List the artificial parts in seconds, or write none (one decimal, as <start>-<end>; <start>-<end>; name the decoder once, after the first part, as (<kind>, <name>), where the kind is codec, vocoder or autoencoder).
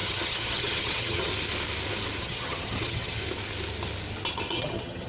0.0-1.3 (vocoder, HiFi-GAN); 2.2-3.2; 4.3-5.1